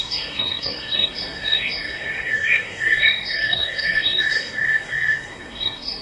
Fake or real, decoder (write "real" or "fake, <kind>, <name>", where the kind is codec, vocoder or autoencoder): fake, codec, SNAC